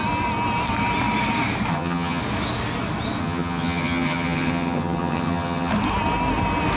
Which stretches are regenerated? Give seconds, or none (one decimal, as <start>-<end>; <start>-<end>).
1.7-2.2; 3.2-5.7